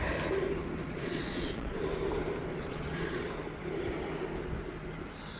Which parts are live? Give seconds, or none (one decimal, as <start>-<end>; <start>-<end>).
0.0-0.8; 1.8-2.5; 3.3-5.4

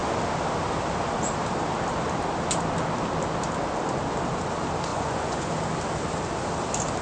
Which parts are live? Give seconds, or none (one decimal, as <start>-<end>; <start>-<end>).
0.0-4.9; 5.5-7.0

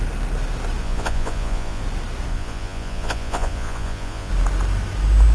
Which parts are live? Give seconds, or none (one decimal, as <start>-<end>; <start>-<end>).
0.0-0.8; 1.8-2.3; 4.3-5.3